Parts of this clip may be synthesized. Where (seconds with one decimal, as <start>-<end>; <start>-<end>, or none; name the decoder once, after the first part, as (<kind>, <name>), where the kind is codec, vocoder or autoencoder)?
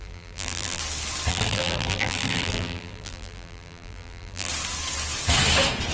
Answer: 0.0-0.8 (vocoder, BigVGAN v2); 1.3-4.5